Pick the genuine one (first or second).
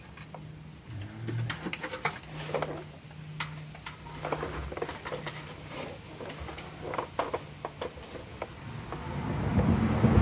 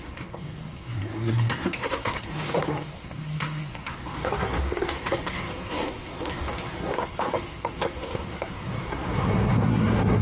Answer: first